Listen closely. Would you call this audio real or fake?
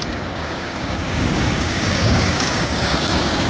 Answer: fake